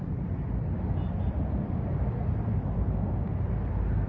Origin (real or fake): real